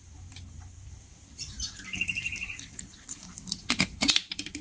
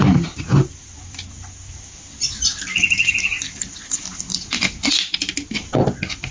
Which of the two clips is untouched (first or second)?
second